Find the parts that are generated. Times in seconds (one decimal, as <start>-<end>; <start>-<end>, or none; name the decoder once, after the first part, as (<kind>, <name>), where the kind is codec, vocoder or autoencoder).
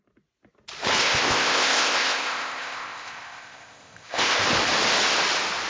1.0-4.4 (codec, ZipCodec)